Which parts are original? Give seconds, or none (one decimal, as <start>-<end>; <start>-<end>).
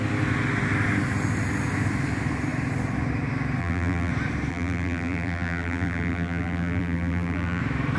0.0-3.6; 4.1-4.5; 7.6-8.0